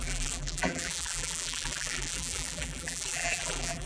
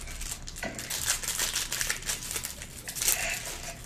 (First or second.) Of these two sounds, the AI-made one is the first